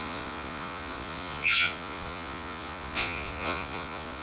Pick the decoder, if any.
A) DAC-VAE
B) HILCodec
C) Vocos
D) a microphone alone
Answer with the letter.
C